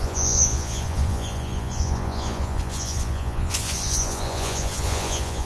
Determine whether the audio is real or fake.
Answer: fake